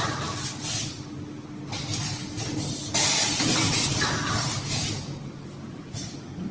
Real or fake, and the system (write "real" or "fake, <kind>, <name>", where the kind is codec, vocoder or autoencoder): real